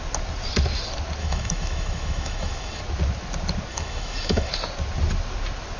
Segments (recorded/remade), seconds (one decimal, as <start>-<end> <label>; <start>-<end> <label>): 0.0-1.2 recorded; 1.2-2.8 remade; 2.8-3.7 recorded; 3.7-4.5 remade; 4.5-5.8 recorded